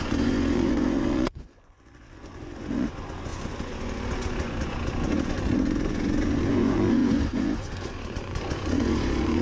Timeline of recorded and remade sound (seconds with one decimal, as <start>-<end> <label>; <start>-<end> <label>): 0.0-9.4 remade